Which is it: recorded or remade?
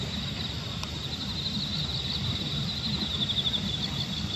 recorded